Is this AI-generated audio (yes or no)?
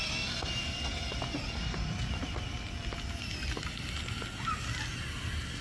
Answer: no